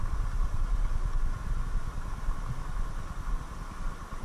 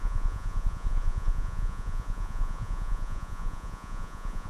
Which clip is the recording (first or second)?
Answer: first